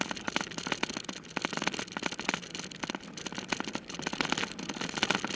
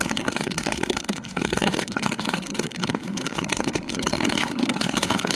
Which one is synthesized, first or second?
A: second